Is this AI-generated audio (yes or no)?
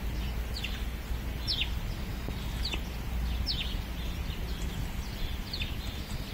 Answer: no